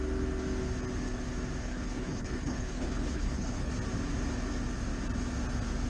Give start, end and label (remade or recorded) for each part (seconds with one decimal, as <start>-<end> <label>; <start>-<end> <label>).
0.0-1.6 recorded; 1.6-3.7 remade; 3.7-5.9 recorded